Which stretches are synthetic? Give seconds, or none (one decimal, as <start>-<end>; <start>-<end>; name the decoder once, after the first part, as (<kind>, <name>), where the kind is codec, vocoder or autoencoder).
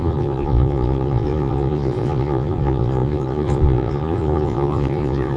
0.0-5.4 (vocoder, Vocos)